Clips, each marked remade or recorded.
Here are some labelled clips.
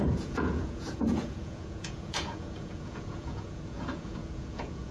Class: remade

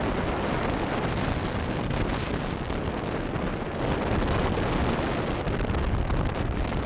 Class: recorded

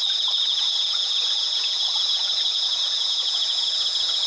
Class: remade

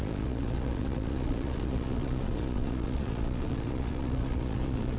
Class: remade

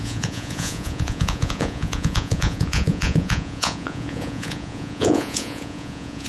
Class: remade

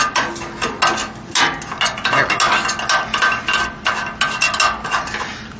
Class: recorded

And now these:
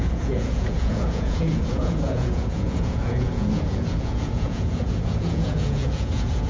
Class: remade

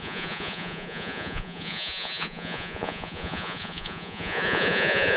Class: remade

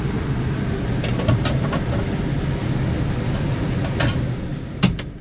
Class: recorded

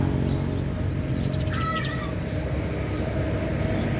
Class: recorded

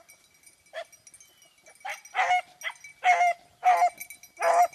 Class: recorded